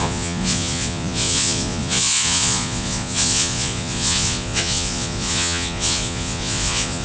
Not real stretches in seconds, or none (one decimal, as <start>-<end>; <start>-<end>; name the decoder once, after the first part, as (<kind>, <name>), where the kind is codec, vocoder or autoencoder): 0.0-7.0 (vocoder, Vocos)

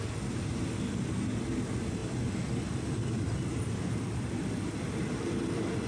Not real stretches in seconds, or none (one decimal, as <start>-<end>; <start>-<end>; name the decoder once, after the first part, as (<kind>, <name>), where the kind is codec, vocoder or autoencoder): none